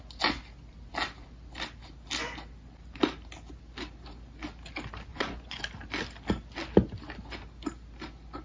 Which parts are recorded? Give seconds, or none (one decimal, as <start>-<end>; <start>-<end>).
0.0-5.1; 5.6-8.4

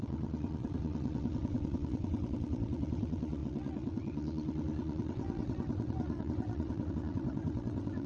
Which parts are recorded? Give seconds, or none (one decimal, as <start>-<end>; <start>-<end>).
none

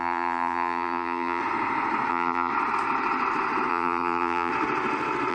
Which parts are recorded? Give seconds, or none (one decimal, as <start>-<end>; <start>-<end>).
1.4-2.1; 2.5-3.7; 4.5-5.3

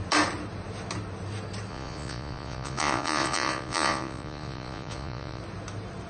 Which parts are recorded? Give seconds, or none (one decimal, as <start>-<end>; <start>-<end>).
0.0-1.7; 5.4-6.1

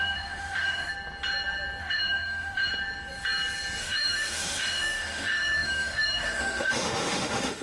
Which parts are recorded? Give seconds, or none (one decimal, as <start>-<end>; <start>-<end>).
0.9-1.8; 2.7-3.8

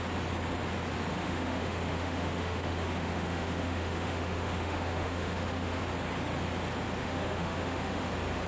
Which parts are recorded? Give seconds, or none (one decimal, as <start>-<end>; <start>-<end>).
0.0-1.1; 5.8-7.0; 8.1-8.5